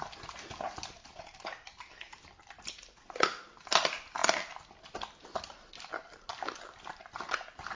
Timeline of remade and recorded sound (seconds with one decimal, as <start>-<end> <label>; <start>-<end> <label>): 0.0-7.8 recorded